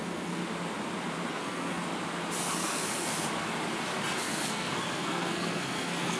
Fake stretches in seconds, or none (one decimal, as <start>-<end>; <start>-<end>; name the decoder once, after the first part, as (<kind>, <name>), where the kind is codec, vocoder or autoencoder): 0.0-0.4 (codec, SNAC); 1.3-1.8; 2.4-3.1; 4.2-6.2